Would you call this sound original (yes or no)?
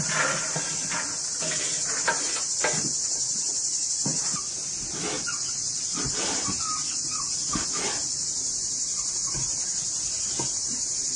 yes